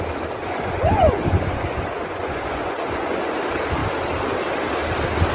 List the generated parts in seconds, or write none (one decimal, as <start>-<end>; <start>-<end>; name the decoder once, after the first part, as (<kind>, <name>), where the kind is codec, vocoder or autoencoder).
0.4-3.4 (vocoder, Vocos)